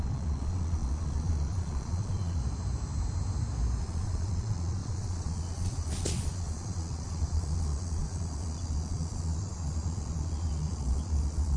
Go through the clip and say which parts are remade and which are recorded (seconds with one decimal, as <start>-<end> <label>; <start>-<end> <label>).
0.0-2.4 remade; 2.4-3.8 recorded; 3.8-11.6 remade